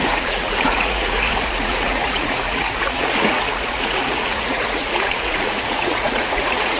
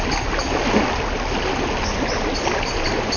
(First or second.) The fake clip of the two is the first